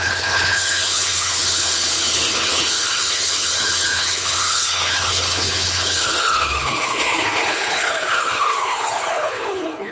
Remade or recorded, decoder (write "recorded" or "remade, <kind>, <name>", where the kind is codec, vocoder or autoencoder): remade, codec, HILCodec